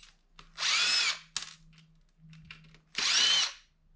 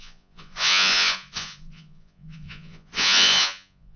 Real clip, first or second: first